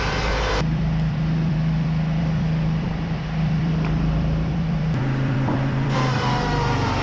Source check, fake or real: fake